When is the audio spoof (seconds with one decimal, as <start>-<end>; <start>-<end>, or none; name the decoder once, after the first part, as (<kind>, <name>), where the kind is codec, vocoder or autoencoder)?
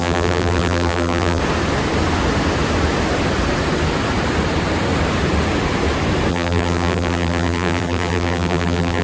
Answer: 0.0-1.4 (vocoder, BigVGAN v2); 6.3-9.0